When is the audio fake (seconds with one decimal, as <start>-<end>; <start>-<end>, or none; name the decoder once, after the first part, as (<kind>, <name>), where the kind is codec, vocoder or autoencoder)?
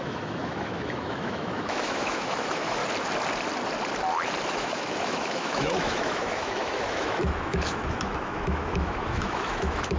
0.0-2.8 (autoencoder, DAC-VAE); 4.5-10.0